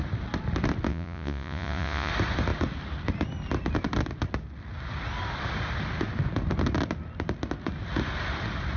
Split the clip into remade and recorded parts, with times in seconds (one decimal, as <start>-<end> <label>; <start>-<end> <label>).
0.0-0.9 recorded; 0.9-2.1 remade; 2.1-8.8 recorded